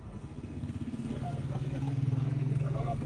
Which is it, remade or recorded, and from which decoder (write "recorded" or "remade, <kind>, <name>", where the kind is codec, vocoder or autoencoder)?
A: remade, codec, SNAC